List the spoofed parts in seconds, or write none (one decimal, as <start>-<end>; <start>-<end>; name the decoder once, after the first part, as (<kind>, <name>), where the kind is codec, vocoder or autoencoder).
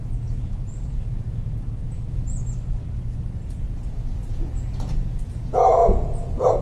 0.0-2.4 (vocoder, Vocos); 3.8-6.6